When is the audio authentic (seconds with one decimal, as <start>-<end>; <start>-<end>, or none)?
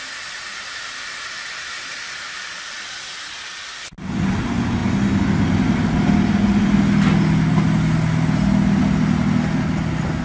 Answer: 0.0-10.2